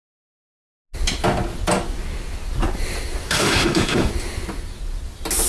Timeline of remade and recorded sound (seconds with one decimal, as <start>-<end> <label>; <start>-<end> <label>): 0.0-3.3 recorded; 3.3-4.1 remade; 4.1-5.5 recorded